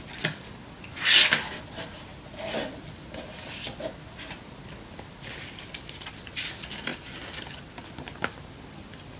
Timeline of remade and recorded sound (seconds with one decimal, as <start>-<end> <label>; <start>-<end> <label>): 0.0-9.2 recorded